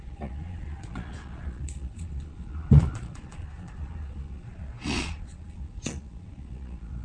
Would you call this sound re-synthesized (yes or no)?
yes